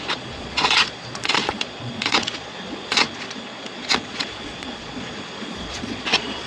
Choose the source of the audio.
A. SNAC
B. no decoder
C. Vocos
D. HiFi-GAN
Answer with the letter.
C